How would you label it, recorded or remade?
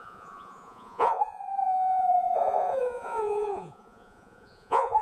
remade